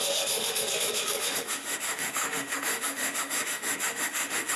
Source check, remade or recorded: remade